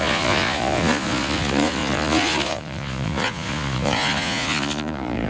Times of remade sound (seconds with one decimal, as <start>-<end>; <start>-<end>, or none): 0.0-5.3

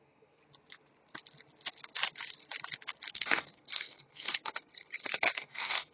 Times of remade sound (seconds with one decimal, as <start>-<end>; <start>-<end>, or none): 0.0-0.4; 3.1-5.9

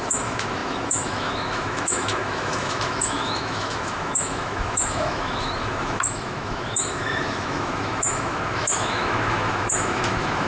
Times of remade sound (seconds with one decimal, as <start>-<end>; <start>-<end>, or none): 0.0-10.5

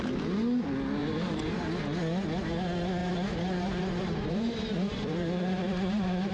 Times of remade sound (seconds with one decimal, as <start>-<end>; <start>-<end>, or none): 1.0-1.6; 3.0-6.3

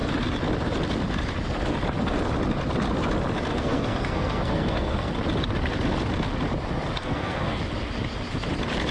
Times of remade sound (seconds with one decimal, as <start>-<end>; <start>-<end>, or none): 3.5-5.1; 7.0-7.6

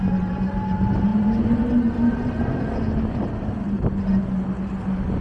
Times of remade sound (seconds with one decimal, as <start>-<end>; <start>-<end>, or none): none

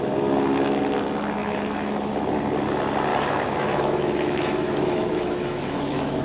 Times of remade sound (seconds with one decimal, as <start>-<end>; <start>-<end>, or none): 1.4-2.1; 3.1-6.2

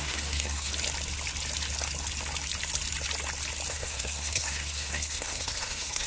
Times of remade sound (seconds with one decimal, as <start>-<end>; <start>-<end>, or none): 0.0-0.7; 3.7-6.1